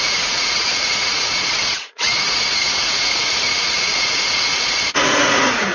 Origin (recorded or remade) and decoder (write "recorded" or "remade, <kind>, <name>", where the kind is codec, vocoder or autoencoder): remade, vocoder, Vocos